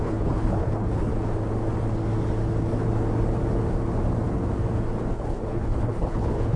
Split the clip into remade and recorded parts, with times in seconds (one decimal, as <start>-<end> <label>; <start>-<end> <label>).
0.0-1.1 remade; 1.1-5.1 recorded; 5.1-6.6 remade